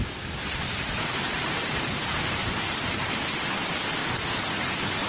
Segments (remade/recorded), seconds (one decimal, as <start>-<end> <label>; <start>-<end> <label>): 0.0-0.4 recorded; 0.4-3.5 remade; 3.5-5.1 recorded